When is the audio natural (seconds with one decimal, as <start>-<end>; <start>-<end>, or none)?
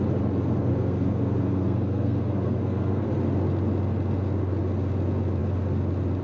0.0-0.7; 3.1-6.2